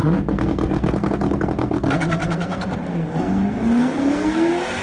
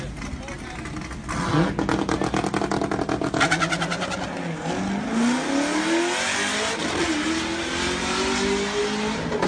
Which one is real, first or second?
second